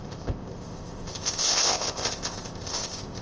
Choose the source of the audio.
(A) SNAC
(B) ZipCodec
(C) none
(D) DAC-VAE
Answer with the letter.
B